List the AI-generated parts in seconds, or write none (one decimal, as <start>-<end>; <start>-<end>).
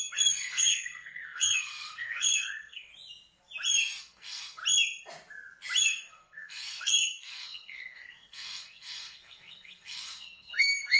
0.0-2.9; 4.0-4.6; 5.8-11.0